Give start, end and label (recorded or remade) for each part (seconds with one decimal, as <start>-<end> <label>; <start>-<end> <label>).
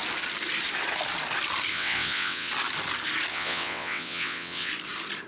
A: 0.0-1.7 recorded; 1.7-2.5 remade; 2.5-3.3 recorded; 3.3-4.7 remade; 4.7-5.3 recorded